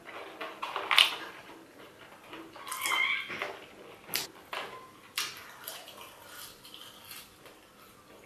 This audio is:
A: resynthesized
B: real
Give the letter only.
B